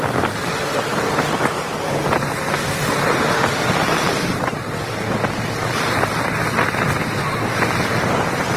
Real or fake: real